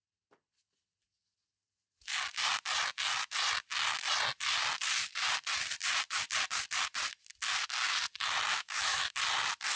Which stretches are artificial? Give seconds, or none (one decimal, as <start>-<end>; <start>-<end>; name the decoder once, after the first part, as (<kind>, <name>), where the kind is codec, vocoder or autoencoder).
8.5-9.1 (autoencoder, DAC-VAE)